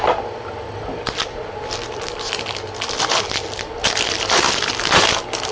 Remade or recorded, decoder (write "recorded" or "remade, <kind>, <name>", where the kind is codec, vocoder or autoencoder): recorded